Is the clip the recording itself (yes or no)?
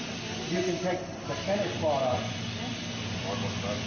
yes